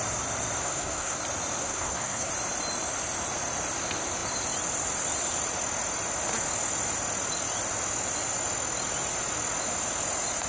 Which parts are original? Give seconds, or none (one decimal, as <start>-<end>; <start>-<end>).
0.0-0.6; 1.2-1.6; 2.3-10.5